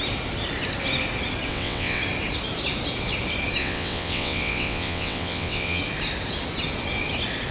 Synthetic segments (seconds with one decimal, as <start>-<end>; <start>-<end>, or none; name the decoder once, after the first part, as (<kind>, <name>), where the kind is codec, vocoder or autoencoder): 1.5-2.0 (vocoder, WaveNeXt); 3.6-5.8

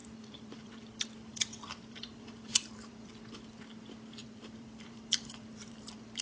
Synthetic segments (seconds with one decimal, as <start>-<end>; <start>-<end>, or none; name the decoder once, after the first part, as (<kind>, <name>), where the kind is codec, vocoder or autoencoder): 0.0-0.7 (vocoder, BigVGAN v2); 1.3-3.1; 4.2-6.2

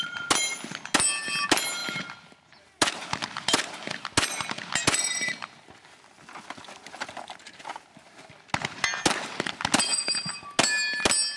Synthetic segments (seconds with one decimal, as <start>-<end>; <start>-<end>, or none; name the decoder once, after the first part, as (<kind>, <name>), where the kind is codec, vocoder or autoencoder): none